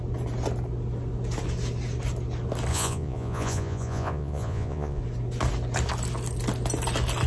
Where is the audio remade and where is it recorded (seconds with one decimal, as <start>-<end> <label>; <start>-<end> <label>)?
0.0-2.7 recorded; 2.7-5.0 remade; 5.0-7.3 recorded